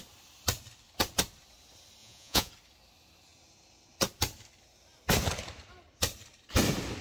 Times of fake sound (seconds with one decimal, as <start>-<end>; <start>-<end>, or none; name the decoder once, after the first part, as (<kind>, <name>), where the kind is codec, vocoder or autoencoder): 2.0-2.5 (vocoder, Vocos)